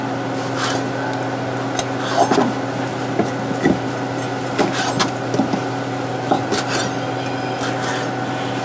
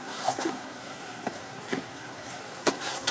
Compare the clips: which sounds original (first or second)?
first